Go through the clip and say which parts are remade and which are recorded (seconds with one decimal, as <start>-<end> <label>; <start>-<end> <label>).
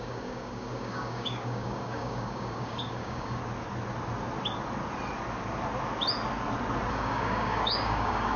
0.0-3.4 remade; 3.4-6.9 recorded; 6.9-8.4 remade